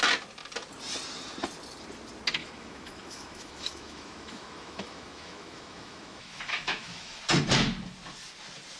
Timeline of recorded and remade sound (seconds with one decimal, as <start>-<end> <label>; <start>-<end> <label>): 0.0-2.4 recorded; 2.4-7.2 remade; 7.2-8.8 recorded